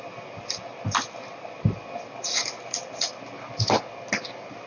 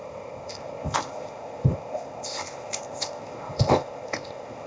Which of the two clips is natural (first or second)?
first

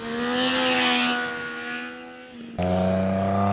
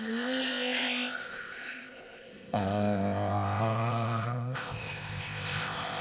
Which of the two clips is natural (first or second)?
first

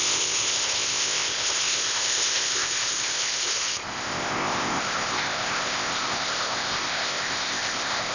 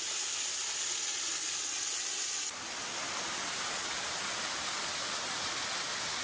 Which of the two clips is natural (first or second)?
second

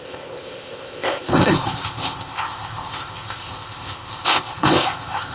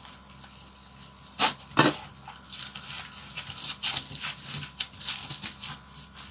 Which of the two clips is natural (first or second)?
second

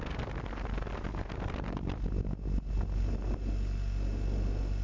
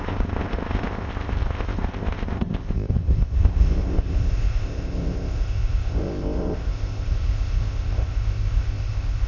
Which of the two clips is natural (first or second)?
first